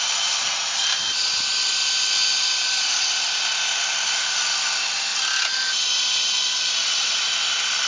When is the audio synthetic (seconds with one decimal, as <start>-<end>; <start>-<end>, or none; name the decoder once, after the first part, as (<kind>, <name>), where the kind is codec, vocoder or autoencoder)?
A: none